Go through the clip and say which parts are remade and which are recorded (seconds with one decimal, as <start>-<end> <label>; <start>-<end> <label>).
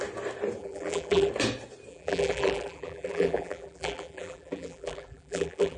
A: 0.0-0.6 recorded; 0.6-1.3 remade; 1.3-1.9 recorded; 1.9-5.8 remade